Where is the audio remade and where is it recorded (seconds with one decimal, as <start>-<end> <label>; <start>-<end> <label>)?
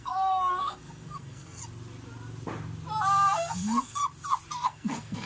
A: 0.0-1.6 remade; 1.6-3.3 recorded; 3.3-4.0 remade; 4.0-4.5 recorded; 4.5-5.3 remade